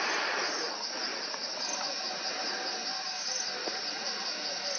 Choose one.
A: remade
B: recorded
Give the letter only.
B